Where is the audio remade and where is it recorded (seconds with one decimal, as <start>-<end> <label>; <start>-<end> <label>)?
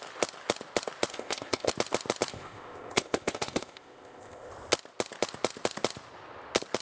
0.0-1.1 recorded; 1.1-1.7 remade; 1.7-2.3 recorded; 2.3-4.5 remade; 4.5-6.8 recorded